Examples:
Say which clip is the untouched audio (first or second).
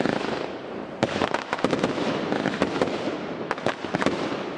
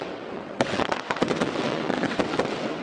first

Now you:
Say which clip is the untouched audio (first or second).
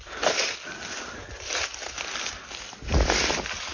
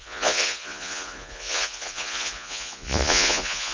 first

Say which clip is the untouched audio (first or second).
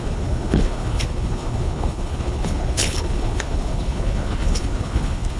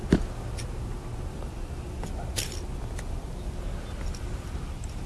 second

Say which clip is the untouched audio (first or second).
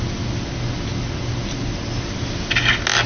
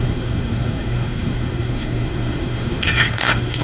first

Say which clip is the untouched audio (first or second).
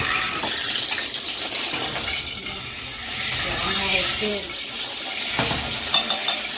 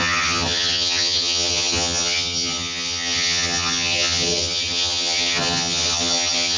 first